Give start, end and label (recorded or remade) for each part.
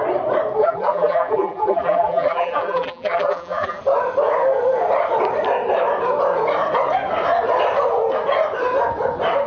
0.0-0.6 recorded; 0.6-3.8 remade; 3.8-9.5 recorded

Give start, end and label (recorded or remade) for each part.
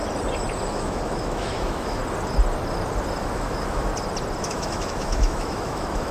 0.0-0.7 recorded; 0.7-2.0 remade; 2.0-3.2 recorded; 3.2-3.9 remade; 3.9-4.4 recorded; 4.4-6.1 remade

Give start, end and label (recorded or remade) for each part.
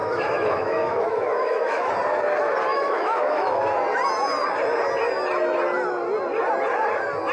0.0-1.9 remade; 1.9-2.7 recorded; 2.7-3.6 remade; 3.6-7.3 recorded